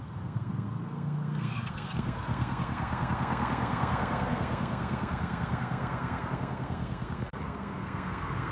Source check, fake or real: fake